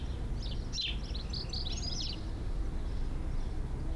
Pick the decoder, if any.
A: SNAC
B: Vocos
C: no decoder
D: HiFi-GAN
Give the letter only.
C